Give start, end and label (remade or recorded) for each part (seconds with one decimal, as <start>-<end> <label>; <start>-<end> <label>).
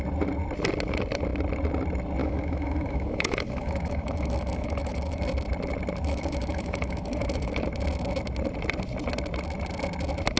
0.0-2.2 recorded; 2.2-5.2 remade; 5.2-6.1 recorded; 6.1-7.6 remade; 7.6-10.4 recorded